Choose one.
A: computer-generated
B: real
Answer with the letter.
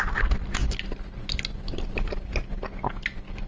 B